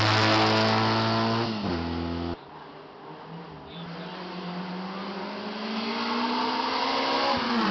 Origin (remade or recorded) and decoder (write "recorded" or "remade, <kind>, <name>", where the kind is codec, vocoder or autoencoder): recorded